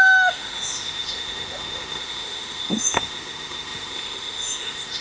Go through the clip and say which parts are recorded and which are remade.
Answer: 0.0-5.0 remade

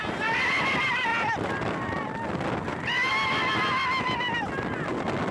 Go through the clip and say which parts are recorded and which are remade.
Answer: 0.0-5.3 recorded